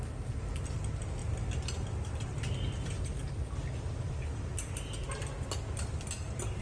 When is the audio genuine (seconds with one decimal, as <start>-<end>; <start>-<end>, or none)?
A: 0.0-6.6